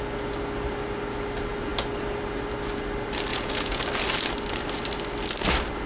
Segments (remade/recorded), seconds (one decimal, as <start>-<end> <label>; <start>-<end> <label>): 0.0-3.3 recorded; 3.3-3.8 remade; 3.8-5.9 recorded